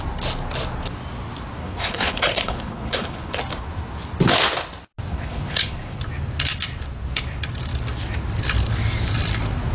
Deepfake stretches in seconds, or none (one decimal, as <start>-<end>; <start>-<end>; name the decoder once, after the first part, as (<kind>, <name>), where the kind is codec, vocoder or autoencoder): 1.6-3.4 (codec, HILCodec); 5.1-6.0